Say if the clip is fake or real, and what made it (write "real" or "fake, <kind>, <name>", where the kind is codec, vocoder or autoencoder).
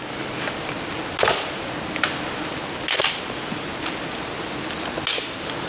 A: real